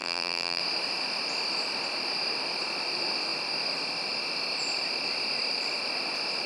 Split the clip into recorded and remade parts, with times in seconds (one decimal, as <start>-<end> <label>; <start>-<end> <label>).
0.0-0.6 remade; 0.6-6.5 recorded